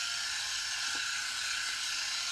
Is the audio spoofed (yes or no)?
no